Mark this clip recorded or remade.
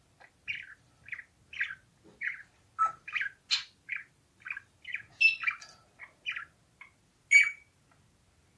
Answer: recorded